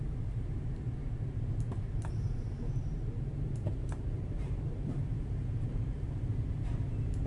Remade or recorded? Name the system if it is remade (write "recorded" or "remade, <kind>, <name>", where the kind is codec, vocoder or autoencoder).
remade, vocoder, BigVGAN v2